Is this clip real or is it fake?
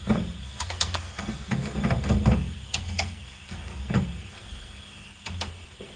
fake